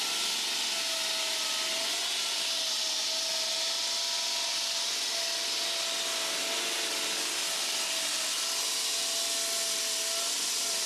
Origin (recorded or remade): recorded